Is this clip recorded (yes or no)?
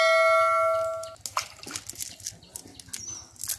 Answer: yes